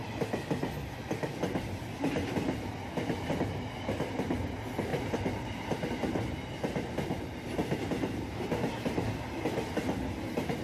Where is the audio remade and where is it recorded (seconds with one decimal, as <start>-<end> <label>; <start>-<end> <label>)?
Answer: 0.0-4.9 recorded; 4.9-5.6 remade; 5.6-7.6 recorded; 7.6-9.1 remade; 9.1-10.6 recorded